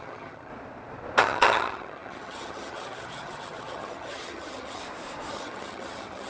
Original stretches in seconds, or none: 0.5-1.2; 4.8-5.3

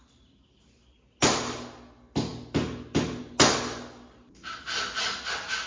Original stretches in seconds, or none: 0.0-5.7

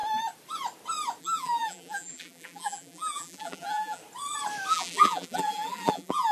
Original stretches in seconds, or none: 0.0-1.2; 4.0-4.7

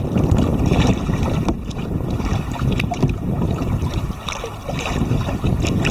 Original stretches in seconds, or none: 0.0-0.5; 4.0-5.9

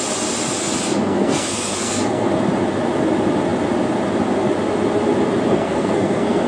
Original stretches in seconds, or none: 0.0-0.9; 2.3-5.5

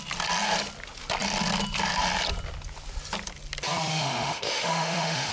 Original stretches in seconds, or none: 0.0-3.9

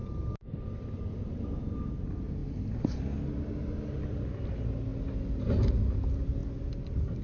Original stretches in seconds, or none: 0.0-7.2